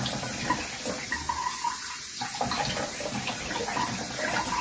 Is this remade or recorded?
recorded